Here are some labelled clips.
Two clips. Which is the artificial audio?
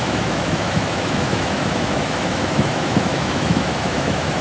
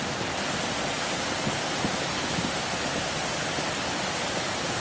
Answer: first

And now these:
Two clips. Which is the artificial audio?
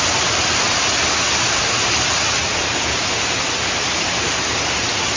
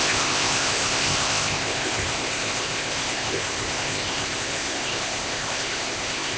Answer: second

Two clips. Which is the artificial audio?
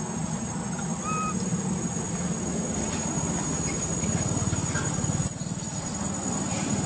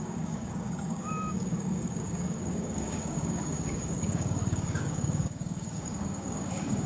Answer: second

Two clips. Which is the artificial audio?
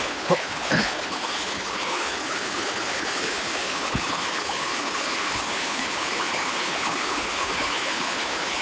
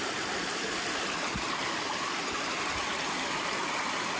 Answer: first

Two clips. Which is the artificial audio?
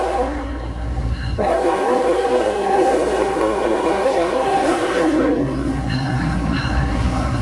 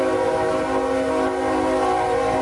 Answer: first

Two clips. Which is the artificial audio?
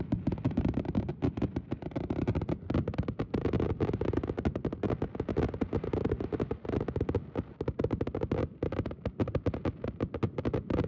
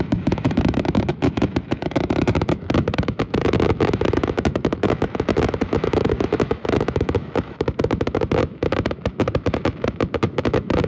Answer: second